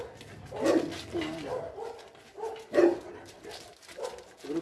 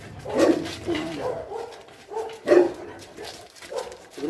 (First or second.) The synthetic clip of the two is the second